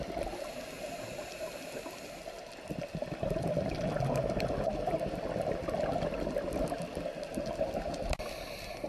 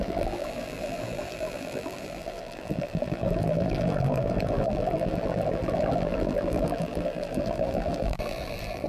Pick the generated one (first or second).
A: second